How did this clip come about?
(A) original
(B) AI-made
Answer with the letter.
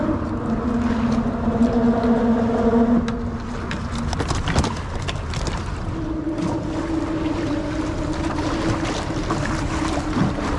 A